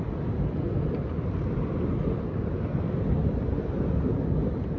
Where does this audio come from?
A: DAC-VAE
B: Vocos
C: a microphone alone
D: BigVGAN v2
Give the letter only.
C